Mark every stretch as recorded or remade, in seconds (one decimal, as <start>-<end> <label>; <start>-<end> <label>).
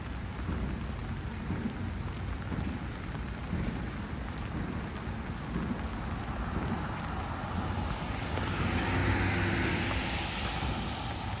0.0-11.4 recorded